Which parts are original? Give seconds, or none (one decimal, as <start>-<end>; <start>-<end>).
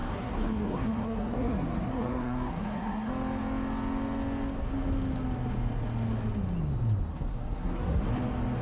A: 3.1-7.1; 8.0-8.6